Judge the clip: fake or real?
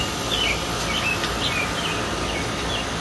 real